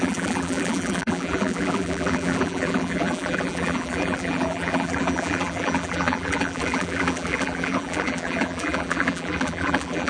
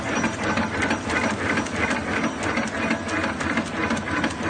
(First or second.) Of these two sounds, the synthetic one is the first